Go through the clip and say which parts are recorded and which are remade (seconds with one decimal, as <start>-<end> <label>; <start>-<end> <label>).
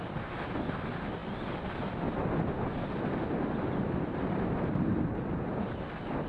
0.0-6.3 recorded